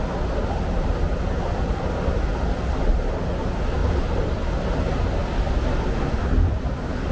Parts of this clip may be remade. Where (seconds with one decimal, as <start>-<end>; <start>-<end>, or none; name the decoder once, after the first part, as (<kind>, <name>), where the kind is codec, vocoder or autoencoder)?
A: 3.8-4.5 (vocoder, BigVGAN v2); 5.2-6.3